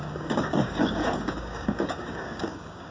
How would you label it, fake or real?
fake